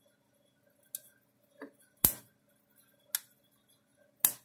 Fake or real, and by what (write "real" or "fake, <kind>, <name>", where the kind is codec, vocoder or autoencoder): real